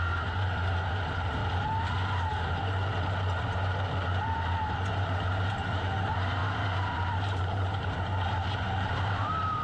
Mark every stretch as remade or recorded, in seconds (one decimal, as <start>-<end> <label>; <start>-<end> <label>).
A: 0.0-1.4 remade; 1.4-4.9 recorded; 4.9-9.6 remade